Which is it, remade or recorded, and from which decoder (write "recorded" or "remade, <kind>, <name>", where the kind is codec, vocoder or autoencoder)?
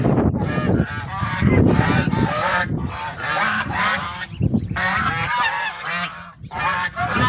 remade, vocoder, BigVGAN v2